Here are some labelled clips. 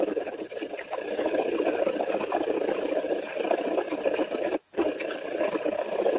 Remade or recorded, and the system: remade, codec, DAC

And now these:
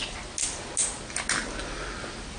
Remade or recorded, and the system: recorded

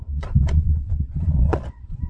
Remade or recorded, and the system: remade, vocoder, Vocos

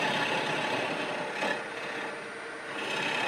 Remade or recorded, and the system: recorded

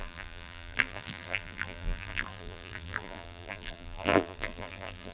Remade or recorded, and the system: remade, vocoder, BigVGAN v2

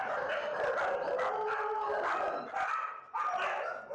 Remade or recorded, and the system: recorded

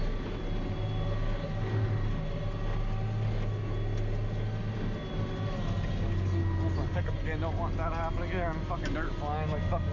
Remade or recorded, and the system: recorded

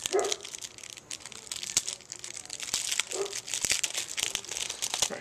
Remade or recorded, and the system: recorded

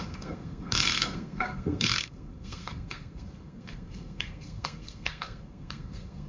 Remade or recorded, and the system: remade, codec, SNAC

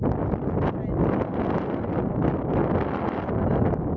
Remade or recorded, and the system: recorded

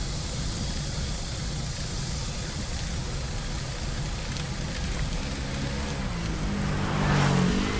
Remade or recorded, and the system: recorded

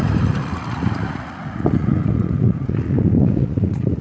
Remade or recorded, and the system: remade, vocoder, Vocos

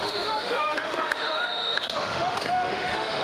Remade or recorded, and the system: remade, autoencoder, DAC-VAE